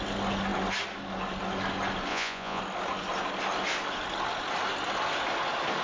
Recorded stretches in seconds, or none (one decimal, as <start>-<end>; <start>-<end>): 0.0-2.1; 2.6-5.8